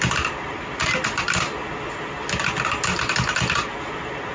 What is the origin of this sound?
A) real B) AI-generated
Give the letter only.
A